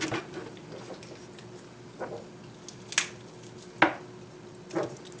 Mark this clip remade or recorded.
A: recorded